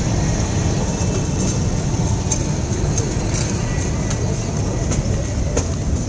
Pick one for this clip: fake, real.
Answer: real